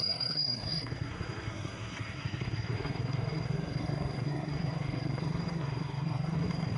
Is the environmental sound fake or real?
fake